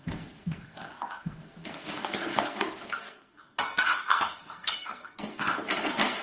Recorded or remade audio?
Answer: remade